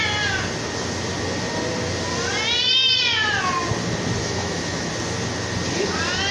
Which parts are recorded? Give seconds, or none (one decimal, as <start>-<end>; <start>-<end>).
0.0-4.2; 4.9-6.3